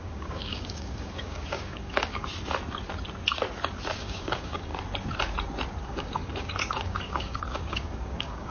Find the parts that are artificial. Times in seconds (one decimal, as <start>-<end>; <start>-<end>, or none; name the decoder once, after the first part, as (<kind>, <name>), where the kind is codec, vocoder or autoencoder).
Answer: 0.0-2.3 (codec, DAC); 4.0-4.7; 5.8-8.5